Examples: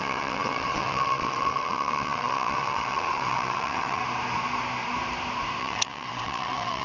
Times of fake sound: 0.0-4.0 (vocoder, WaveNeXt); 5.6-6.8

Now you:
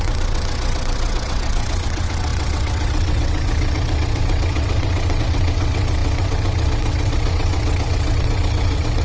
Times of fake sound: 0.0-9.0 (vocoder, WaveNeXt)